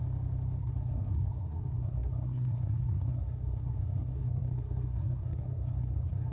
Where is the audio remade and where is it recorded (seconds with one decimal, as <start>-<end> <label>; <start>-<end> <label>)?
0.0-0.6 recorded; 0.6-6.3 remade